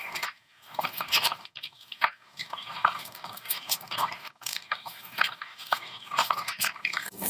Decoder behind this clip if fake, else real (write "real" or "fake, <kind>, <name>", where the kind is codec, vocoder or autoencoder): fake, codec, DAC